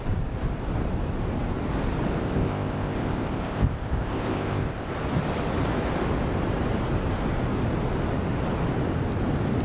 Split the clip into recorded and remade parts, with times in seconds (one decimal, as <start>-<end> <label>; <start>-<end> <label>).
0.0-2.2 recorded; 2.2-4.9 remade; 4.9-9.6 recorded